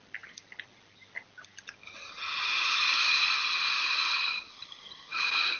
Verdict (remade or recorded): recorded